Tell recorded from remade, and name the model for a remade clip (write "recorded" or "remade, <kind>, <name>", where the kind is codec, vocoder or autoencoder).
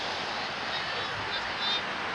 recorded